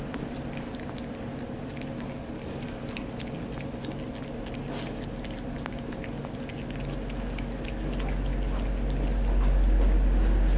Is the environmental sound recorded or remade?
recorded